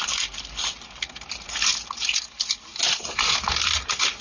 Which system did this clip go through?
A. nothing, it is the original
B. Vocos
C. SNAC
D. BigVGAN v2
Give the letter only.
A